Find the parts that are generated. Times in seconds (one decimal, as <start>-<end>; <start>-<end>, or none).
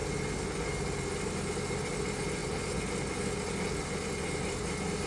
none